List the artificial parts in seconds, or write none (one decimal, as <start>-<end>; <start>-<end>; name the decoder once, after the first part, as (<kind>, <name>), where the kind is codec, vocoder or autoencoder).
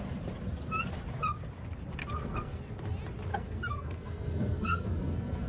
2.0-2.6 (codec, SNAC); 3.3-5.5